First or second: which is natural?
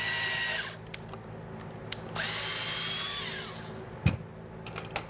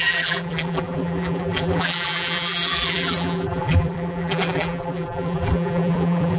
first